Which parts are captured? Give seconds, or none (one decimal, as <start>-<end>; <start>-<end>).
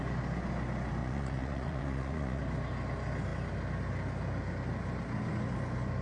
0.0-1.0; 2.4-6.0